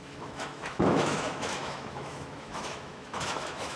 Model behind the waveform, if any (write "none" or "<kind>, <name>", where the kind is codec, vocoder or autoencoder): autoencoder, DAC-VAE